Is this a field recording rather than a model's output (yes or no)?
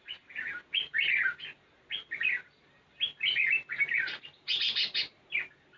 yes